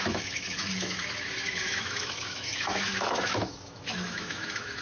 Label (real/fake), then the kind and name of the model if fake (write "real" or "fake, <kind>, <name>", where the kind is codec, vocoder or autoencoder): fake, autoencoder, DAC-VAE